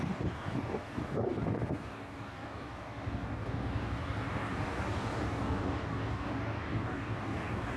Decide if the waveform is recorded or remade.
remade